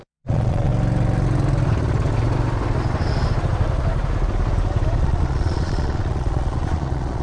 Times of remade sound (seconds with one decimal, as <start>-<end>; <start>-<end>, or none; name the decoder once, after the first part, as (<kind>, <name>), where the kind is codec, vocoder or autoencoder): 0.0-0.7 (vocoder, Vocos); 5.0-7.2